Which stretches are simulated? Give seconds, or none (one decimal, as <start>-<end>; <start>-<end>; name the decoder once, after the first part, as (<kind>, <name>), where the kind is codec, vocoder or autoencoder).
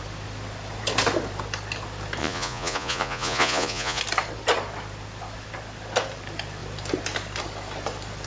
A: 2.2-4.0 (vocoder, Vocos)